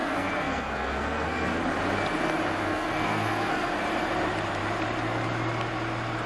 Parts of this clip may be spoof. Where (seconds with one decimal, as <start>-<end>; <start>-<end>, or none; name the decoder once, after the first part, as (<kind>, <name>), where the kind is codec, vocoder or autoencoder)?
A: 0.0-1.6 (codec, SNAC); 2.6-3.7